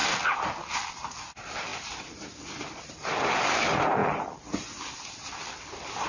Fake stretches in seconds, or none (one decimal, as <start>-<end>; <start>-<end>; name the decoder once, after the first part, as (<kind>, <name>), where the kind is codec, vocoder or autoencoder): 0.9-6.1 (vocoder, BigVGAN v2)